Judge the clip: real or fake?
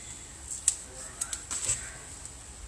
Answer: real